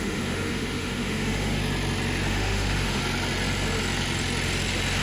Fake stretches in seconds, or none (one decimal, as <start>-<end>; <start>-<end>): 0.0-1.6; 2.3-3.0